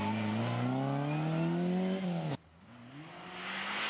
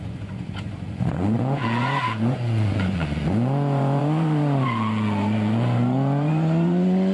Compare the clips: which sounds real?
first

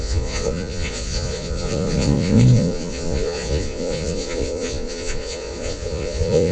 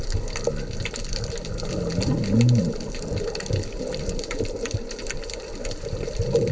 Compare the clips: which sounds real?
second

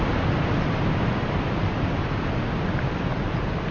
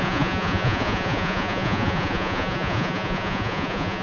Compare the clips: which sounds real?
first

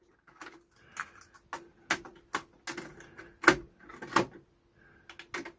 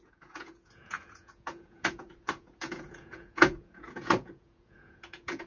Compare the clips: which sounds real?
first